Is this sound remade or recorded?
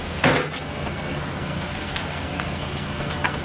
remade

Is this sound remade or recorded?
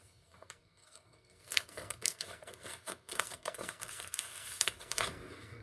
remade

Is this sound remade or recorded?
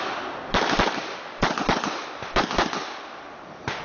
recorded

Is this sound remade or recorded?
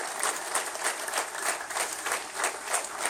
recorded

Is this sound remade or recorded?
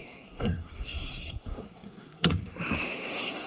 remade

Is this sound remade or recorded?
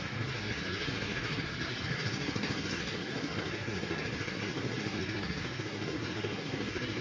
remade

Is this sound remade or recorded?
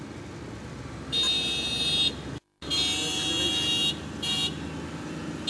recorded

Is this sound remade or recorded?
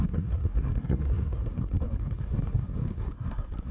remade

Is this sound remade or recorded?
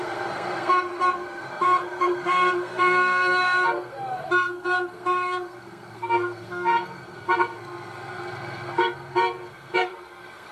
remade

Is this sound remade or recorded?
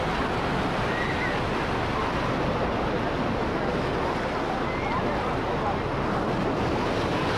recorded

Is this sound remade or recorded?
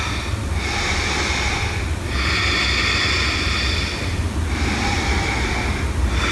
recorded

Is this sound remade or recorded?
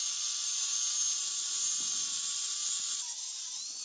recorded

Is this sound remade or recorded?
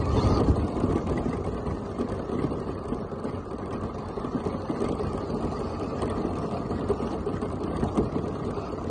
recorded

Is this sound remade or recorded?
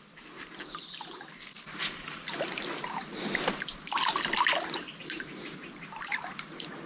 recorded